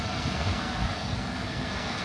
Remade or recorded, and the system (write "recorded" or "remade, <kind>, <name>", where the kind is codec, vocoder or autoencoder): remade, codec, SNAC